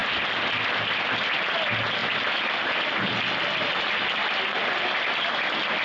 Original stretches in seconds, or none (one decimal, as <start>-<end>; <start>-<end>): 0.0-5.8